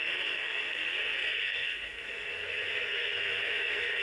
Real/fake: fake